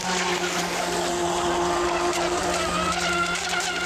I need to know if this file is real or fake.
real